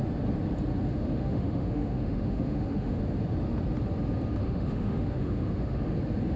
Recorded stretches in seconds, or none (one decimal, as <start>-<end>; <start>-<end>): 0.0-0.9; 3.0-4.4; 5.8-6.4